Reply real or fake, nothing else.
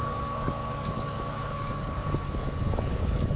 fake